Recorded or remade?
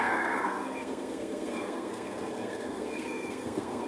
remade